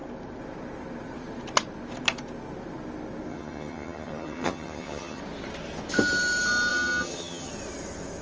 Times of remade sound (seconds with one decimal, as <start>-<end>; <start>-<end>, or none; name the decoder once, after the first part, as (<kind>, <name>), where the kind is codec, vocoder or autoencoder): 3.3-5.2 (vocoder, HiFi-GAN); 6.7-7.5